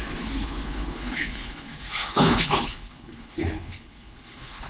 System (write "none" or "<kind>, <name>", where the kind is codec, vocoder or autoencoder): codec, HILCodec